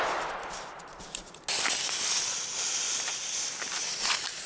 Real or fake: real